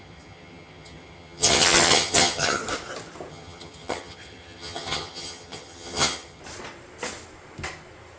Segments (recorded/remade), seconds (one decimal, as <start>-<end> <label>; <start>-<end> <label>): 0.0-2.6 remade; 2.6-3.3 recorded; 3.3-6.4 remade; 6.4-8.2 recorded